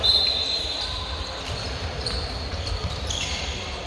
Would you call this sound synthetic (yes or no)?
yes